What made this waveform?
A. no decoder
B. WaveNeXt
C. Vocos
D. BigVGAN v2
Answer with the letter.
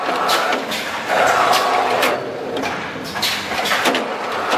D